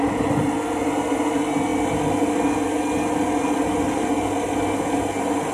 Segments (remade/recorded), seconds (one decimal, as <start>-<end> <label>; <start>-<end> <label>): 0.0-5.5 recorded